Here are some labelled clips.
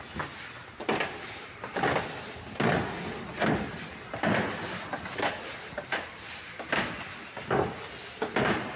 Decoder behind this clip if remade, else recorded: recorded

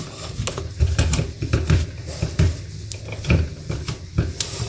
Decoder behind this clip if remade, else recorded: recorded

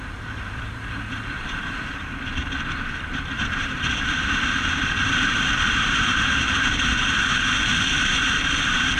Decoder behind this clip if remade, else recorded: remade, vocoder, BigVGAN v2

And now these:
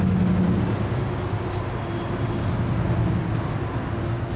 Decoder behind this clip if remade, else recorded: recorded